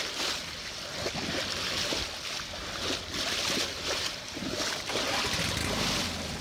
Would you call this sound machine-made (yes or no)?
no